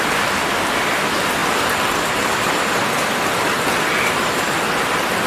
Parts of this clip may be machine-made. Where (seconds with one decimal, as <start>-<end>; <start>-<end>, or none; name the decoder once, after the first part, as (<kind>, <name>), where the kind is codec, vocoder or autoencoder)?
0.0-1.4 (vocoder, BigVGAN v2); 4.0-5.3